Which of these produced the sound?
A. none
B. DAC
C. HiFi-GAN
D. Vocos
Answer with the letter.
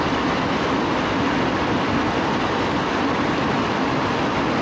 A